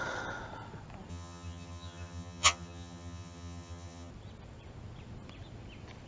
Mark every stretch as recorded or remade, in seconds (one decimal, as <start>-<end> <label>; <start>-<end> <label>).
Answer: 0.0-1.1 recorded; 1.1-4.1 remade; 4.1-6.1 recorded